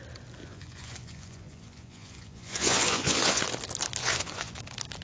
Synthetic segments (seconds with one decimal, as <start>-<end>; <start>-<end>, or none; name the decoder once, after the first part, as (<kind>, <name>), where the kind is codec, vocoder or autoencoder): 0.4-3.4 (vocoder, Vocos); 4.0-4.6